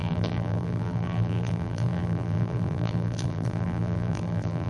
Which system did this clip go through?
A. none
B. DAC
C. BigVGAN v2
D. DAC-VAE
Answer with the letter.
C